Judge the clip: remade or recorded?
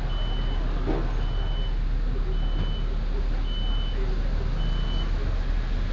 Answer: recorded